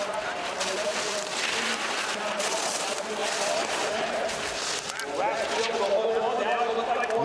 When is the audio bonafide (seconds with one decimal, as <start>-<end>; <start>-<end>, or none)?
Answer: 0.0-7.2